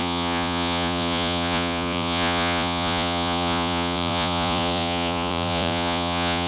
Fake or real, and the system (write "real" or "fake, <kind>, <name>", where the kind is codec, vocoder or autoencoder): fake, vocoder, Vocos